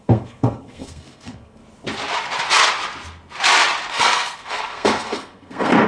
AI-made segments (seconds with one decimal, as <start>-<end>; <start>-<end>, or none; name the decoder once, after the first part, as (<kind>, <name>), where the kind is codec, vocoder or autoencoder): 0.0-1.6 (codec, SNAC); 3.9-5.9